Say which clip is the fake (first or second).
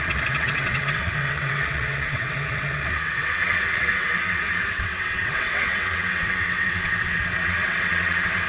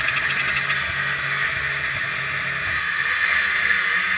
first